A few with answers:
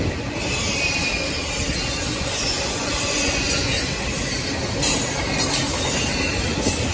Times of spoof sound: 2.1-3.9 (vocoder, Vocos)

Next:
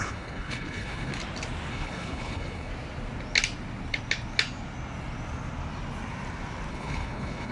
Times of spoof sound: 0.0-1.1 (codec, HILCodec); 1.7-2.7; 6.7-7.5

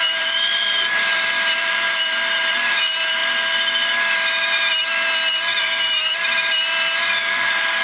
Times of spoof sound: 0.0-3.2 (vocoder, BigVGAN v2); 5.6-7.8

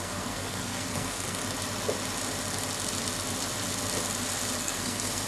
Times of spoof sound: 0.0-1.4 (codec, SNAC); 4.6-5.3

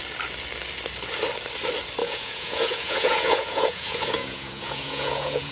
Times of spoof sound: 2.0-5.5 (vocoder, Vocos)

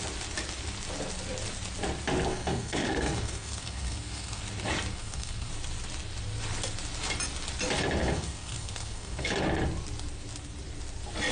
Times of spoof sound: 2.3-4.4 (codec, SNAC); 4.9-5.5; 8.0-9.3

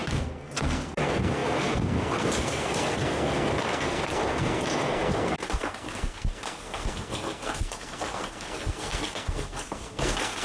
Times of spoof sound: 0.0-10.4 (codec, SNAC)

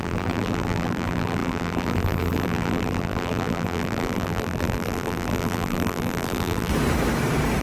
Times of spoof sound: 0.0-6.7 (vocoder, BigVGAN v2)